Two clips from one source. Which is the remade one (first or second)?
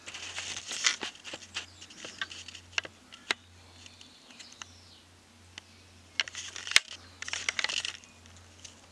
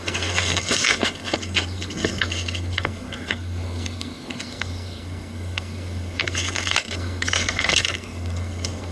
second